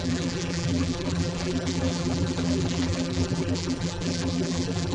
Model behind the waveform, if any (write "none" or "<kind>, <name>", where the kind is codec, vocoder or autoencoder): vocoder, BigVGAN v2